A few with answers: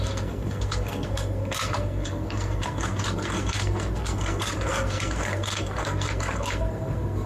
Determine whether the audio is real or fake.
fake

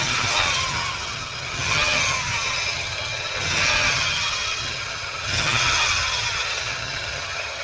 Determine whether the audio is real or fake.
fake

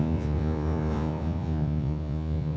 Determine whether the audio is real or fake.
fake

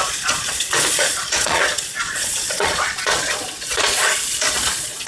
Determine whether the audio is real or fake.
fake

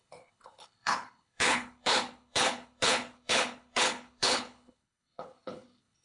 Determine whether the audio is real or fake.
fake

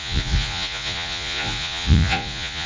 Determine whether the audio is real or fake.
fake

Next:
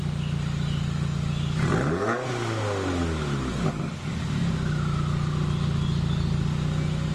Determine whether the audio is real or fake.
real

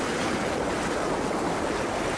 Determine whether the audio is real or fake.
real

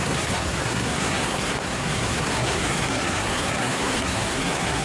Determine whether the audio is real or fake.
fake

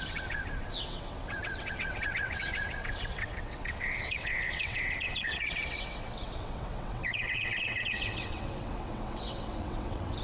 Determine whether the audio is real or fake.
fake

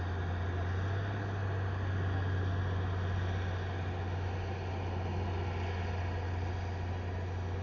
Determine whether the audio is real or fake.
real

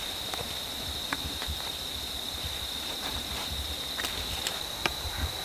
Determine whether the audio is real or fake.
fake